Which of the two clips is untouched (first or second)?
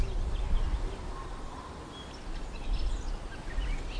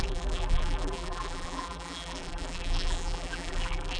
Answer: first